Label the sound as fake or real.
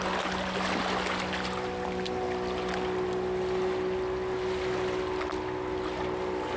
real